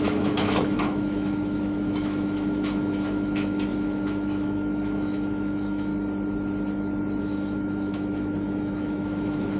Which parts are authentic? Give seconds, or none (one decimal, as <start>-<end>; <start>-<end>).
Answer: 5.9-7.2